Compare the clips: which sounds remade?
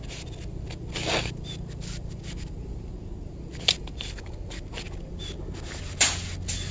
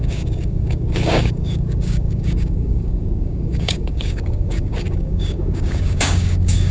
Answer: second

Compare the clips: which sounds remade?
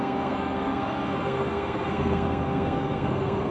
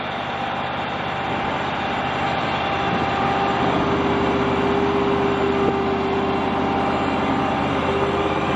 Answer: first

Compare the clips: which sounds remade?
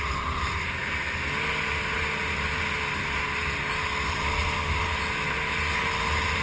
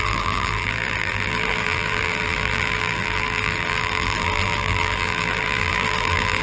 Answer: second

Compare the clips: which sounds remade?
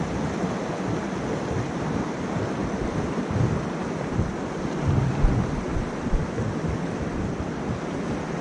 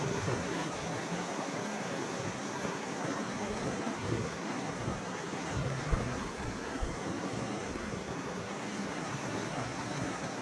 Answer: second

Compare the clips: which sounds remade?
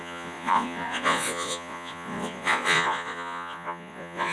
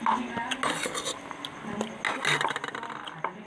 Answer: first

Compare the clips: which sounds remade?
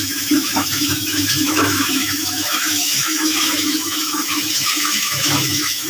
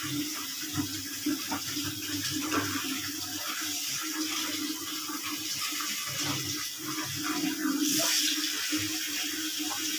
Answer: first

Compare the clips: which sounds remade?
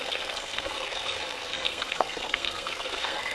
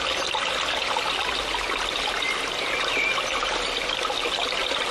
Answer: first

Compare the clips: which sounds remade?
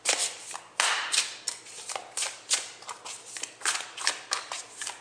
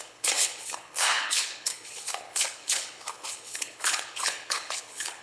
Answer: second